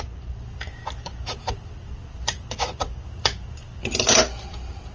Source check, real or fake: real